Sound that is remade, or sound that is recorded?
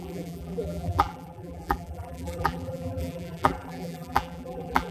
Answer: remade